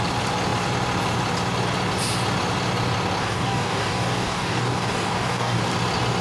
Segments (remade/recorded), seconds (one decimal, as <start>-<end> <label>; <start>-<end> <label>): 0.0-3.2 recorded; 3.2-5.6 remade; 5.6-6.2 recorded